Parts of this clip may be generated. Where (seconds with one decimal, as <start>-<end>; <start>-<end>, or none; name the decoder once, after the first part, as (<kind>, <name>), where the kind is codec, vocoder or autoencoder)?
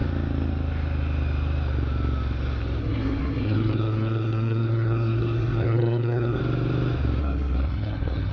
2.8-6.4 (codec, SNAC); 7.2-8.3